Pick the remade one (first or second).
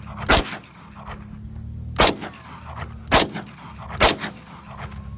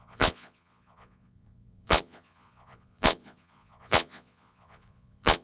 second